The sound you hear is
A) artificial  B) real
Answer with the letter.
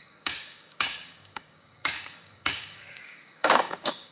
A